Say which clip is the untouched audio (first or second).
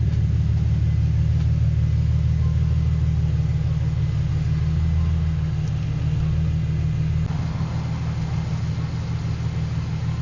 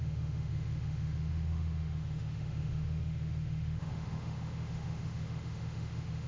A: first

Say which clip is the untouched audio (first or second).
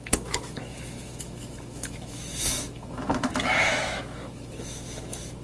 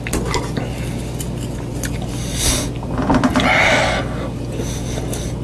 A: second